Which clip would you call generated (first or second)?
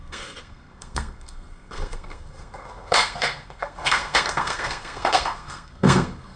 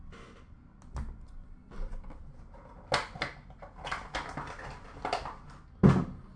first